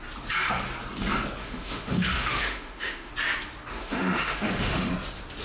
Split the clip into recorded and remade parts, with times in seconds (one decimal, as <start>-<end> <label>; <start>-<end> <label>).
0.0-1.4 recorded; 1.4-3.1 remade; 3.1-3.7 recorded; 3.7-4.9 remade; 4.9-5.4 recorded